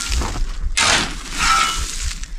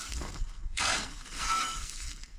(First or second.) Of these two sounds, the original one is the first